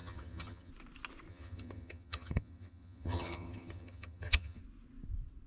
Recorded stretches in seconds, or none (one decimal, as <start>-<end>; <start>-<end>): 0.7-1.3; 4.6-5.5